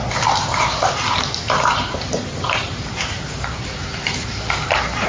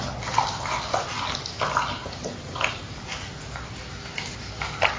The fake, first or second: first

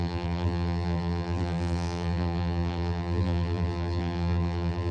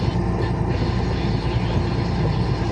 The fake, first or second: first